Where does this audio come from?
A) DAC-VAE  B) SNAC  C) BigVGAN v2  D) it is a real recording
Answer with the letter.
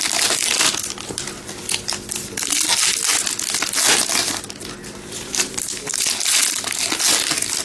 D